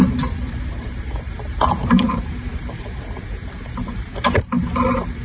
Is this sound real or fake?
fake